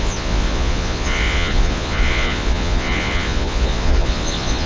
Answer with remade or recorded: remade